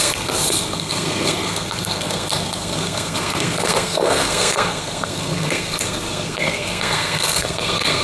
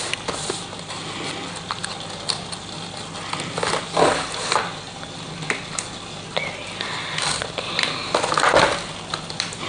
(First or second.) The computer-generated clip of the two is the first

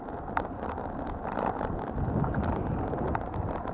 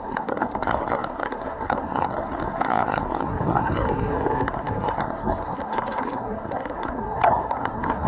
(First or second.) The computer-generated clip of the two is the second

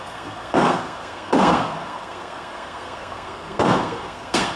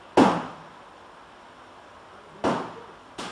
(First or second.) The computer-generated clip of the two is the first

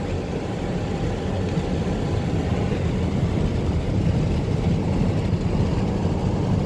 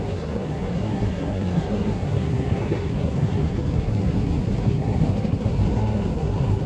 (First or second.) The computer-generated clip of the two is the second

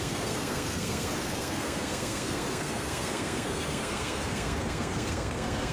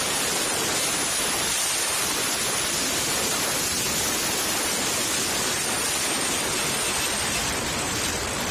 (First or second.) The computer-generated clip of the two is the first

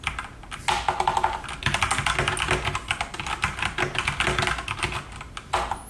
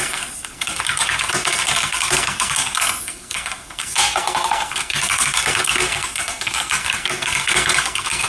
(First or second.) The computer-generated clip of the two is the second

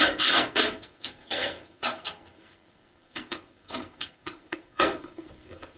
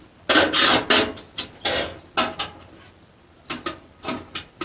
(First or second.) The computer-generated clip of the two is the first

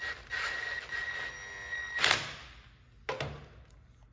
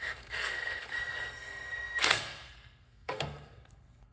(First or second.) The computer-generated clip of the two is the second